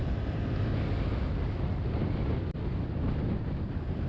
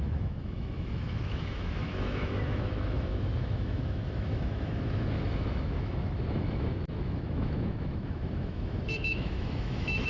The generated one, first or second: second